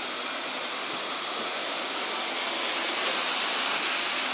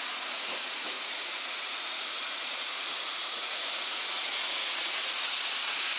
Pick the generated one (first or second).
second